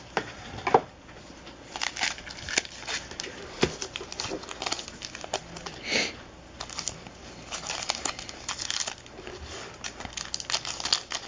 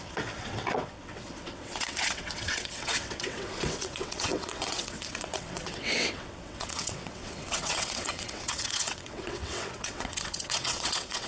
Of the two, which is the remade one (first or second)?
second